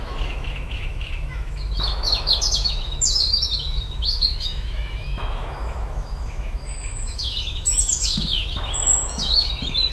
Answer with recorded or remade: remade